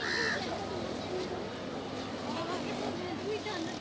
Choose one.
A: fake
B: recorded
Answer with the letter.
B